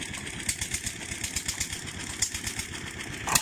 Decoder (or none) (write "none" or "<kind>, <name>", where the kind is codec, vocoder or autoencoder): none